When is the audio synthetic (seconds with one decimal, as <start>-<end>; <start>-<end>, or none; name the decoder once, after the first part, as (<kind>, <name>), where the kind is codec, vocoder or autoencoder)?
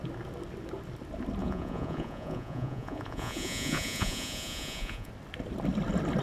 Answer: 1.4-5.1 (vocoder, Vocos)